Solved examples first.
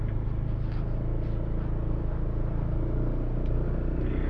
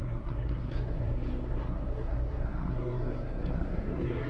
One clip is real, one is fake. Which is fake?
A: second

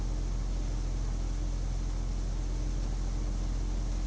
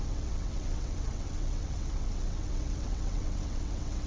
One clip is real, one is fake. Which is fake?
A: second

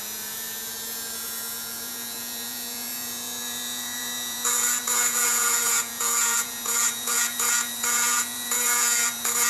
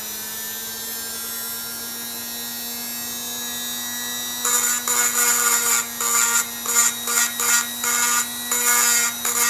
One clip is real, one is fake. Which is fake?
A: first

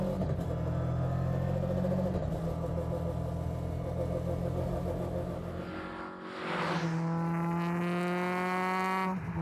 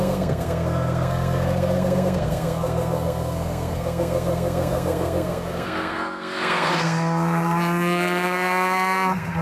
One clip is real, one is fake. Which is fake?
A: second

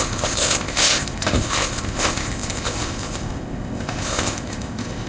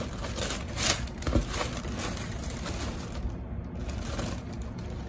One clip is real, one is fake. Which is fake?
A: first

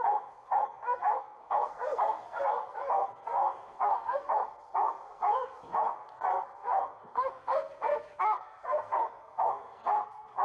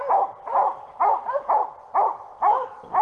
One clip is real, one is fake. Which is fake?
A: first